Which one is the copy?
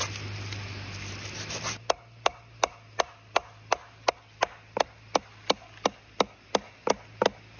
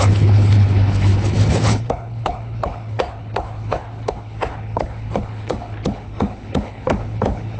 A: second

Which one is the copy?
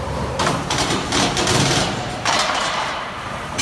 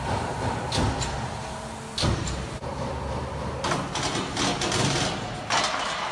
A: first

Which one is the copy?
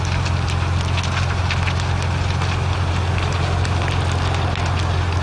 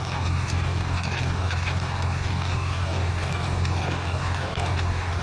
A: second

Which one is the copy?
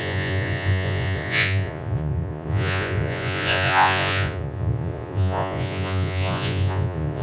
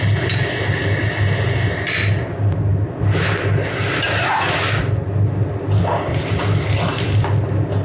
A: first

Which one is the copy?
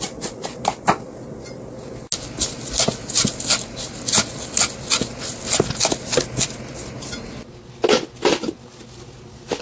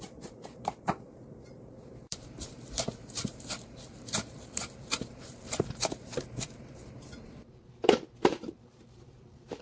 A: second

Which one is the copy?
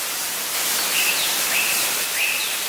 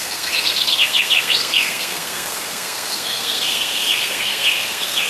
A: second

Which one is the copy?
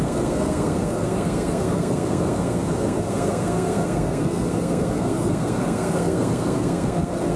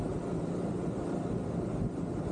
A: first